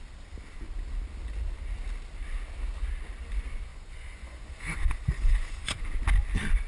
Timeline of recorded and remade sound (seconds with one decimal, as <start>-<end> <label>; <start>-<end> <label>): 0.0-3.7 recorded; 3.7-5.8 remade; 5.8-6.7 recorded